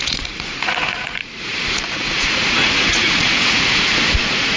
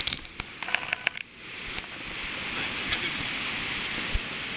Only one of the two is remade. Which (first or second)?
first